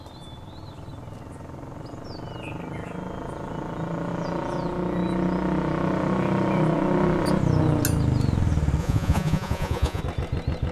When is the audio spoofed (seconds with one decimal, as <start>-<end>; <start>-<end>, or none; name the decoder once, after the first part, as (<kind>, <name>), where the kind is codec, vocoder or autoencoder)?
8.8-10.0 (vocoder, Vocos)